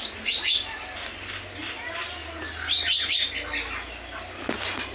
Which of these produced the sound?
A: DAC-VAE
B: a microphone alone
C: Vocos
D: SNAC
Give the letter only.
B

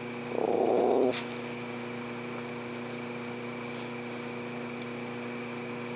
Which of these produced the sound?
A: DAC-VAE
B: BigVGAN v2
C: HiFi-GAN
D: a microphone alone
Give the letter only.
D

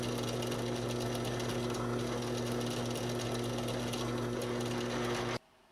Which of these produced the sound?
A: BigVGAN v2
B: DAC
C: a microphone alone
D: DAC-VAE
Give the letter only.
C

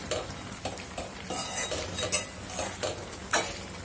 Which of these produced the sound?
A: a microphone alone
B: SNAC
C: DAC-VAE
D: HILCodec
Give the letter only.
A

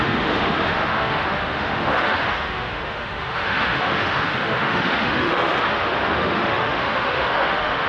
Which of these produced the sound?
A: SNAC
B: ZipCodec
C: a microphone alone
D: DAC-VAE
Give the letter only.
D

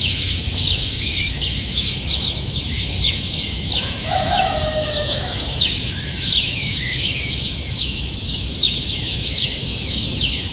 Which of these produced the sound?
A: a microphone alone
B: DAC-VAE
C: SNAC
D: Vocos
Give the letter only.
B